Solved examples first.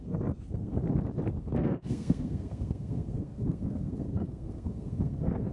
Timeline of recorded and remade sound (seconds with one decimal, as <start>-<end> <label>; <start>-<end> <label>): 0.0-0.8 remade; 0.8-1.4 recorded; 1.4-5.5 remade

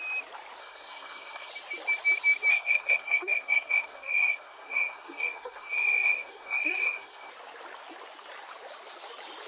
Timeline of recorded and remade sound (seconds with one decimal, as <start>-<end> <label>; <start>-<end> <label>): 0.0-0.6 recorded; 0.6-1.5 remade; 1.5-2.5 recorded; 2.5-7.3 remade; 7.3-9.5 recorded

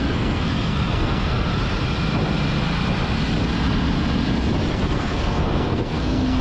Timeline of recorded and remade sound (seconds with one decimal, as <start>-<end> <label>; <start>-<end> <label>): 0.0-1.5 remade; 1.5-4.7 recorded; 4.7-6.4 remade